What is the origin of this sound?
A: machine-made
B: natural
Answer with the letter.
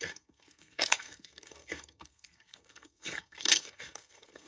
A